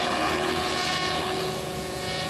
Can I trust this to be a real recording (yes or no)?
no